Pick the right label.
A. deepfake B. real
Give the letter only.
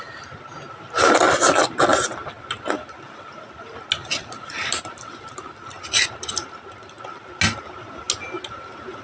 B